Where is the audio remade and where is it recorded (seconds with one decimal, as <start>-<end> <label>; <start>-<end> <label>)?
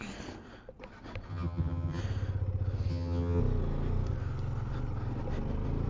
0.0-1.3 recorded; 1.3-2.0 remade; 2.0-2.9 recorded; 2.9-3.4 remade; 3.4-5.9 recorded